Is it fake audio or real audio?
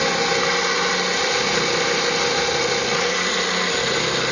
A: real